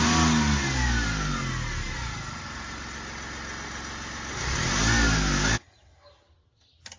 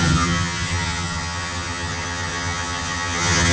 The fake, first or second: second